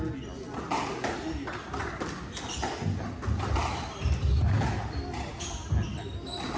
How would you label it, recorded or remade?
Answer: recorded